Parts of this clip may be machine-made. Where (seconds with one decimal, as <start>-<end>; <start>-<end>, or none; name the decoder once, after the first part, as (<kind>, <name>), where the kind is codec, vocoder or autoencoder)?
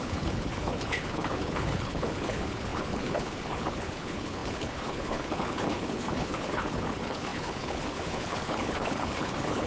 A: 0.0-9.7 (codec, HILCodec)